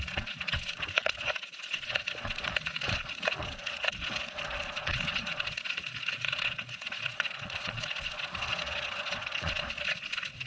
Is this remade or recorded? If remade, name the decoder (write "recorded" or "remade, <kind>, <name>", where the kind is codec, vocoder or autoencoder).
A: remade, vocoder, Vocos